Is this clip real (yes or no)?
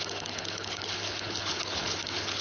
no